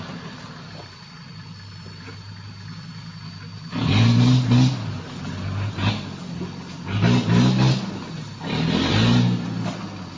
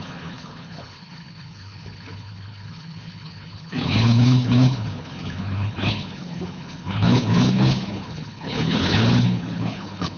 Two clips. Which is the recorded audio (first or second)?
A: first